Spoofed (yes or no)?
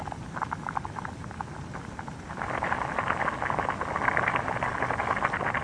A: no